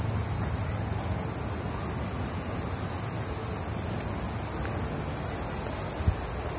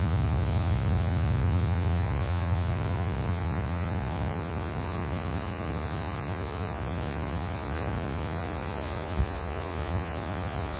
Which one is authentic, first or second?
first